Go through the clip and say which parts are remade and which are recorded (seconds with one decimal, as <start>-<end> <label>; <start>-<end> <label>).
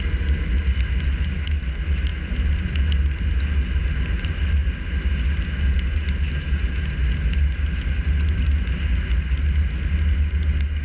0.0-10.8 recorded